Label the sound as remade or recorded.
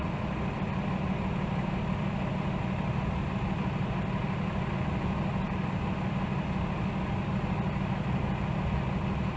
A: recorded